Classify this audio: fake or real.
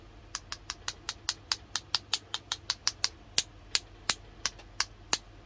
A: real